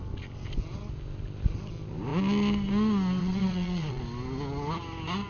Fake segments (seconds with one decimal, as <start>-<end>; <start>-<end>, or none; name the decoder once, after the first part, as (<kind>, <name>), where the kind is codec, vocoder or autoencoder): 3.2-4.0 (vocoder, Vocos)